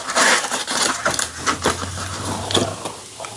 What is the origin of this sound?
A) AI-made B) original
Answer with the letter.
B